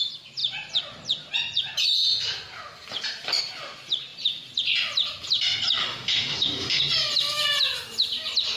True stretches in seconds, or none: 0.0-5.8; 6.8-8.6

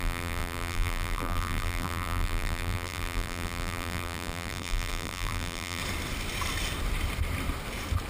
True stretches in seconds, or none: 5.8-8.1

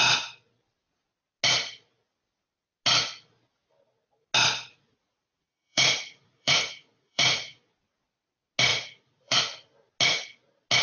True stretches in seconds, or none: 0.0-4.7; 7.6-8.7; 9.4-10.8